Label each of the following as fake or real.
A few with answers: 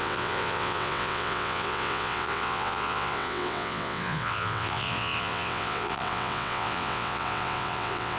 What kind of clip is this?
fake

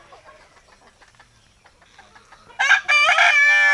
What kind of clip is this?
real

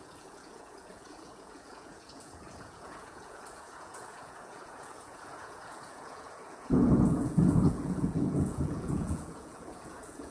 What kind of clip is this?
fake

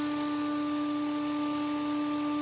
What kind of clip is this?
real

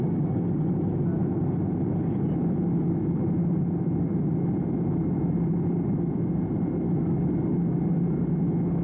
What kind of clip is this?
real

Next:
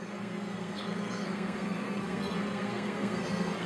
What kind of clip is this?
fake